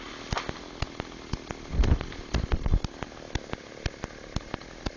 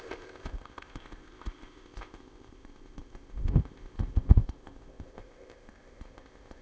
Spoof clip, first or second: second